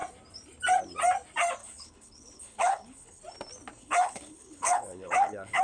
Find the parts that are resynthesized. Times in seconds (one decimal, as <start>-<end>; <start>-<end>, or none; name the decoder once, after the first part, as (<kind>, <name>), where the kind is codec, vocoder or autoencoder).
1.6-3.2 (codec, HILCodec); 3.8-5.6